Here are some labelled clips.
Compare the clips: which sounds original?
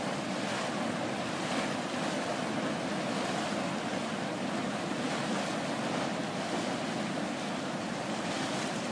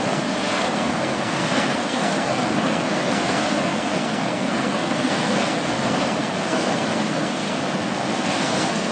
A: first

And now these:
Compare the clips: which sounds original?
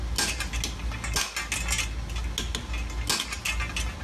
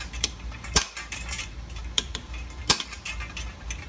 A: first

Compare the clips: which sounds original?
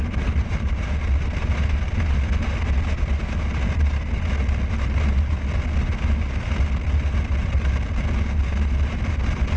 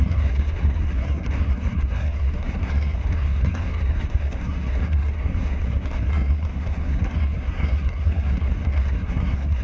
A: first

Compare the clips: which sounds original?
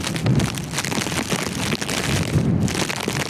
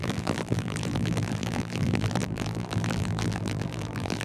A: first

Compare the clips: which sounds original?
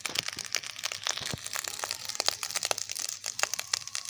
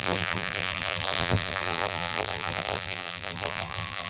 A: first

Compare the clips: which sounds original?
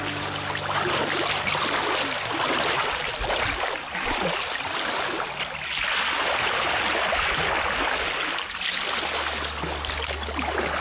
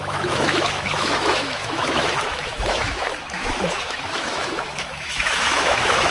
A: first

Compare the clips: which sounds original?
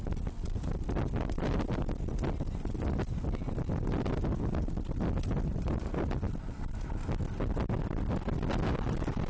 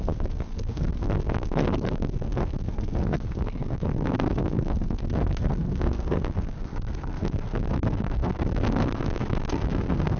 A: first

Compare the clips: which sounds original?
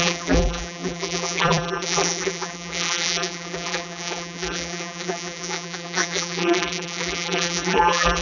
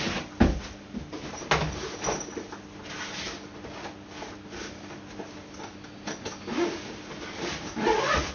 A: second